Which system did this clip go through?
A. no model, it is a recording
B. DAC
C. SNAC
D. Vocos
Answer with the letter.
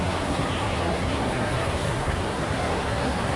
C